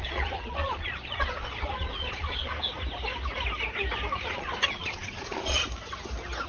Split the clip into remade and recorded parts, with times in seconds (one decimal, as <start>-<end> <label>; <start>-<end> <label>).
0.0-2.5 remade; 2.5-4.3 recorded; 4.3-5.6 remade; 5.6-6.5 recorded